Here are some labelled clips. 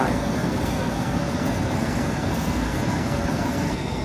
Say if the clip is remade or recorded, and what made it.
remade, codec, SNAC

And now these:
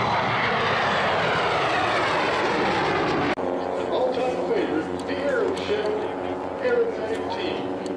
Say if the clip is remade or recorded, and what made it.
recorded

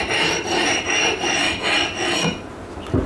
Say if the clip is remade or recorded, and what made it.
recorded